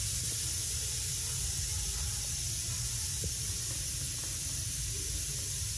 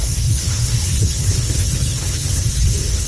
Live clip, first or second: first